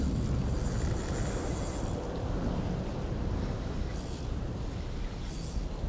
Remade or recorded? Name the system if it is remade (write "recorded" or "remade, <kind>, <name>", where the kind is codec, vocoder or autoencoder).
recorded